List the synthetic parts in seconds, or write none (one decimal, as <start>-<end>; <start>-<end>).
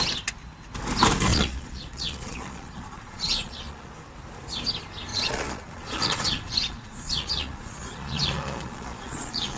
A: 1.3-3.9; 5.1-9.6